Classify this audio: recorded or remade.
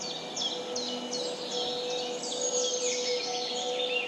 recorded